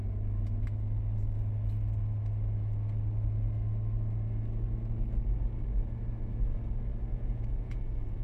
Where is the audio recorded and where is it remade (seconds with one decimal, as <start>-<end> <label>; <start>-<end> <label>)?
0.0-7.1 recorded; 7.1-8.2 remade